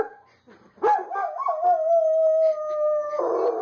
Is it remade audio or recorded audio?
recorded